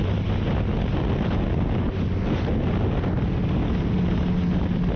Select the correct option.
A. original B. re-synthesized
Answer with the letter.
A